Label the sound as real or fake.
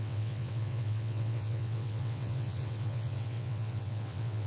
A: fake